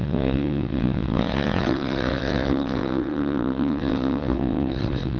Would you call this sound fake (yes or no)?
yes